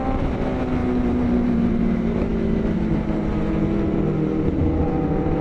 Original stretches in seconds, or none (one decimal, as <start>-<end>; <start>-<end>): 0.0-0.8; 1.7-5.4